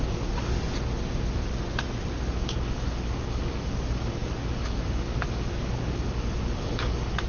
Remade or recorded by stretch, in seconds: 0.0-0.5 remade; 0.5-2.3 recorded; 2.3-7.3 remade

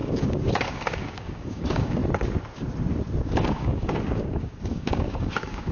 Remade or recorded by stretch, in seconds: 0.0-2.0 remade; 2.0-3.2 recorded; 3.2-5.7 remade

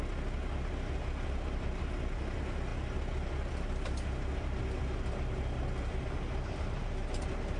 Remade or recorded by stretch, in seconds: 0.0-7.6 recorded